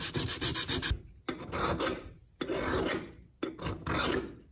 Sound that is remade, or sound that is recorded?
recorded